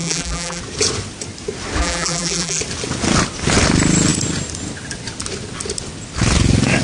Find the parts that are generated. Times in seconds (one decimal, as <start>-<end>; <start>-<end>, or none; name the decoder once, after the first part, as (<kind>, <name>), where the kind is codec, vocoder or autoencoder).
0.0-0.6 (vocoder, BigVGAN v2); 1.8-2.6